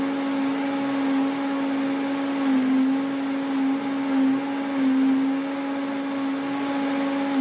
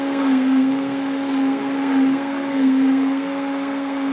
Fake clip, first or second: second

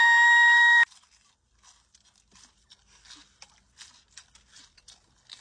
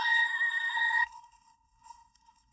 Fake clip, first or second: second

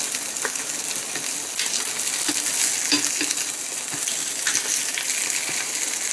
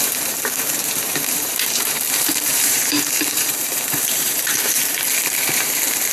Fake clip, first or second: second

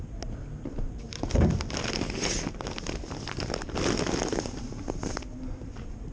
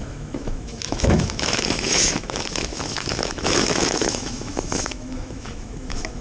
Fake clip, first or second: second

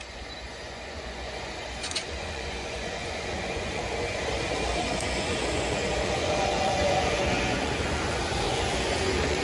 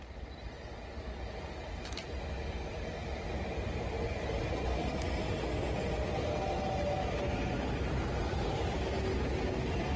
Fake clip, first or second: first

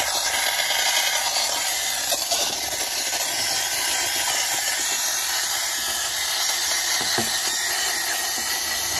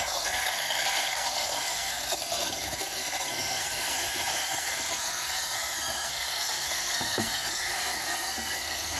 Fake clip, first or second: second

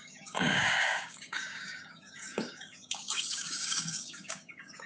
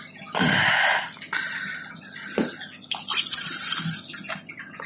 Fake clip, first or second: first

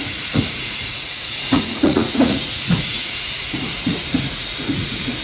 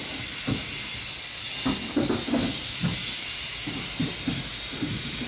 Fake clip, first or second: first